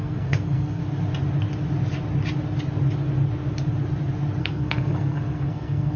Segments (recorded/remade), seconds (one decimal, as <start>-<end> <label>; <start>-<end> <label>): 0.0-0.8 remade; 0.8-4.4 recorded; 4.4-6.0 remade